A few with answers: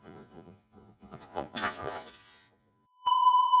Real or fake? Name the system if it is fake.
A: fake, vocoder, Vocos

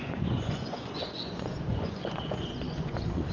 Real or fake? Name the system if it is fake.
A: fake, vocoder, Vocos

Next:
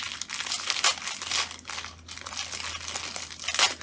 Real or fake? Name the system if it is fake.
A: real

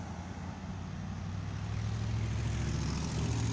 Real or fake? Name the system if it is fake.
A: real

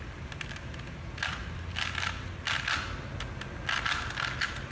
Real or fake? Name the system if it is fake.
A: real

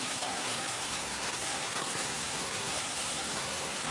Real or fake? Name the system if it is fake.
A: fake, codec, SNAC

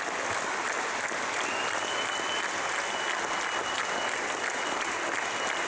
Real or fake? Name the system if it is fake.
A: real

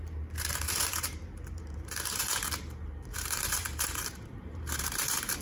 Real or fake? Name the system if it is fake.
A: fake, vocoder, BigVGAN v2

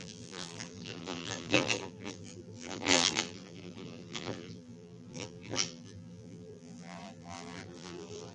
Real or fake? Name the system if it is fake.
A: fake, vocoder, BigVGAN v2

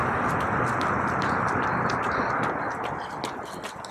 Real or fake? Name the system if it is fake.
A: real